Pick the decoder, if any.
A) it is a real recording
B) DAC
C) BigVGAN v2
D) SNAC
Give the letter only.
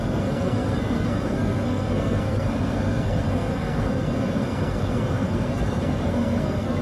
D